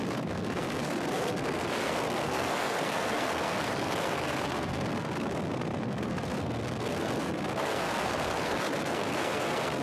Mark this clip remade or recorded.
remade